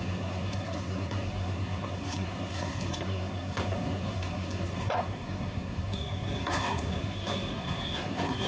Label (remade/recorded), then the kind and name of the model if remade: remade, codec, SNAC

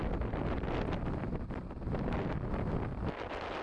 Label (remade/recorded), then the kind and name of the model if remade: recorded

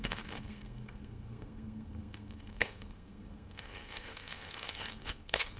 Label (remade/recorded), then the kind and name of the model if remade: remade, codec, SNAC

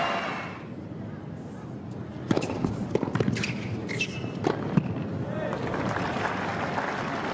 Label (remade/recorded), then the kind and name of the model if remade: recorded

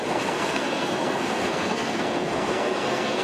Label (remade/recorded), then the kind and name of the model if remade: remade, codec, SNAC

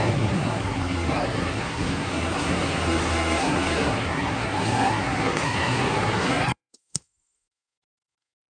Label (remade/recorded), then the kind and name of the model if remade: remade, codec, SNAC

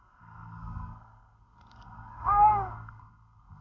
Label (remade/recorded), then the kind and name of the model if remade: remade, codec, SNAC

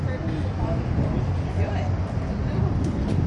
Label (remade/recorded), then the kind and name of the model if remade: recorded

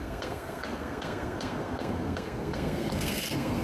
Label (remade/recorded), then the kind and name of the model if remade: remade, codec, SNAC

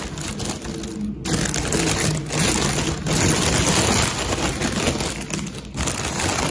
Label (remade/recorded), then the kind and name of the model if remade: recorded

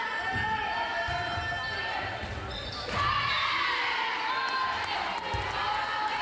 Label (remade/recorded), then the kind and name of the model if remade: recorded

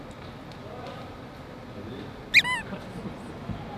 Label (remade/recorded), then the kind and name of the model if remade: recorded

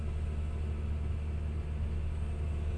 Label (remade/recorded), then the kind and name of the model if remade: recorded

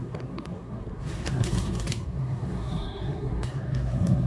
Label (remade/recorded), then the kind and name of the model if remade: remade, codec, SNAC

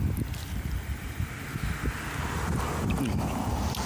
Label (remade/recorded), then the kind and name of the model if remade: recorded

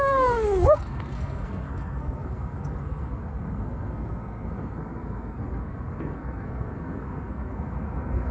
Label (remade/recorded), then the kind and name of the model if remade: remade, codec, SNAC